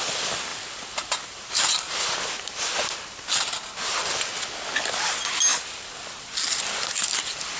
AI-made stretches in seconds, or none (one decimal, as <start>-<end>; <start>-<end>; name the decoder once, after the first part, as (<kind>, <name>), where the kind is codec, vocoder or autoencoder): 0.5-2.0 (vocoder, BigVGAN v2); 5.5-7.6